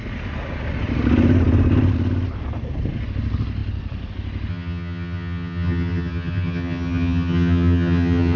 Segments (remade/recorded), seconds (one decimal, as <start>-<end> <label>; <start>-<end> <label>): 0.0-4.5 recorded; 4.5-8.4 remade